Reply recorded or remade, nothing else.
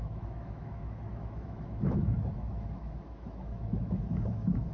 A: remade